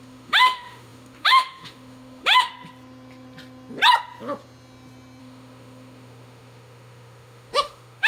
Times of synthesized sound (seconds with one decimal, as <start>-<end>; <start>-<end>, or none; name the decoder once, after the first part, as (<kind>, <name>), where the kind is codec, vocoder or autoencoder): 0.0-2.5 (autoencoder, DAC-VAE); 5.2-8.1